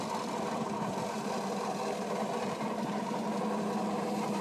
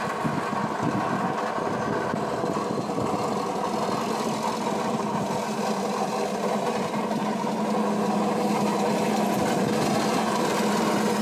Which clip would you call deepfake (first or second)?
first